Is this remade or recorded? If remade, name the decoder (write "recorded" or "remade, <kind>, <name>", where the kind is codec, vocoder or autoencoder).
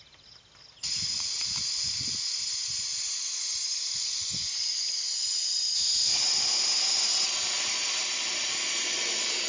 recorded